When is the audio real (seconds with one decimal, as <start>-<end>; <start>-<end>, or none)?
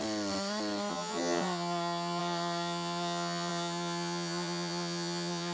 0.0-0.9